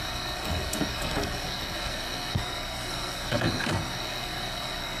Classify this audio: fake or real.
fake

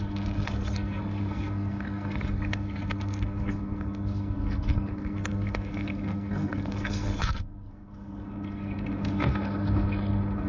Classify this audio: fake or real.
fake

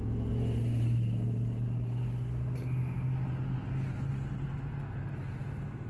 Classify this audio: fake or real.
real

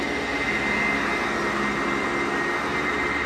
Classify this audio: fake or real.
real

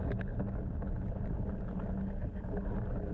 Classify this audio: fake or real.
real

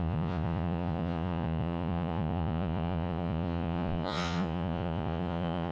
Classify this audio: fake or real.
fake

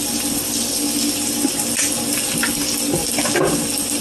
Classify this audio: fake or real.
real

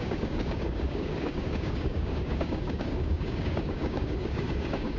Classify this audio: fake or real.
fake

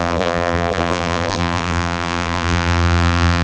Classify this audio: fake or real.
fake